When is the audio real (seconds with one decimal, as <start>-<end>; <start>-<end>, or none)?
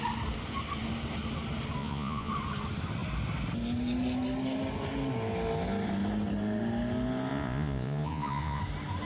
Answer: 0.0-1.8; 2.3-7.3; 8.6-9.1